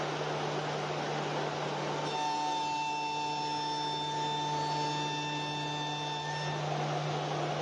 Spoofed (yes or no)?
no